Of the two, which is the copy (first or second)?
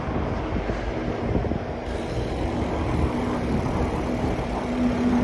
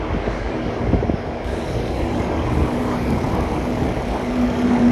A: second